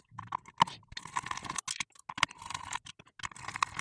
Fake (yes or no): no